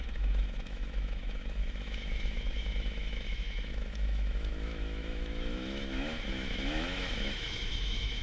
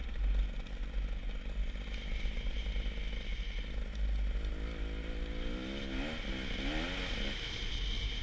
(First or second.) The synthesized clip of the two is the first